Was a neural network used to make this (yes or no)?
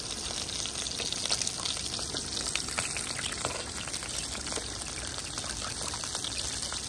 no